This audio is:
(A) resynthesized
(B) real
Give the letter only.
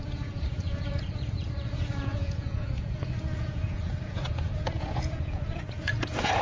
A